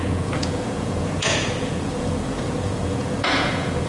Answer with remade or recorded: remade